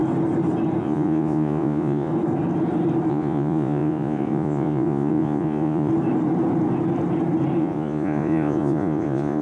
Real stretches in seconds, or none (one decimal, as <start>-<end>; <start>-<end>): 0.0-0.8; 2.1-3.1; 5.9-7.6